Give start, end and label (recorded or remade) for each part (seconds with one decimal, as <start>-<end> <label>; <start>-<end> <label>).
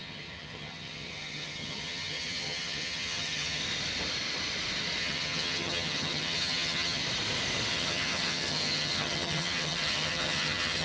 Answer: 0.0-3.6 remade; 3.6-5.0 recorded; 5.0-7.0 remade; 7.0-7.7 recorded; 7.7-10.8 remade